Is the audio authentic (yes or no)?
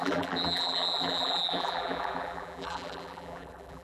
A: no